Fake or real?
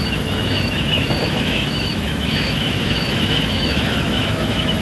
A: fake